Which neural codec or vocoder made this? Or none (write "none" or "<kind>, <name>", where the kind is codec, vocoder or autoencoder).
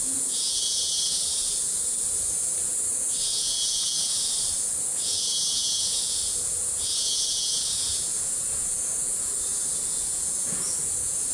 vocoder, Vocos